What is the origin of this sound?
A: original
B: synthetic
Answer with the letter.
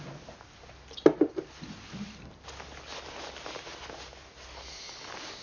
A